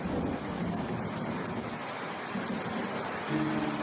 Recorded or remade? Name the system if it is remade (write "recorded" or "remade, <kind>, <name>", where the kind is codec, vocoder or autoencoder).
recorded